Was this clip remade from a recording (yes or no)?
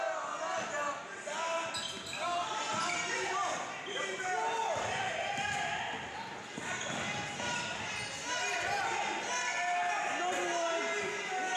no